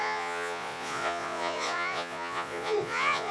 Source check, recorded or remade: remade